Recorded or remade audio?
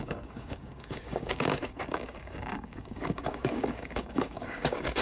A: remade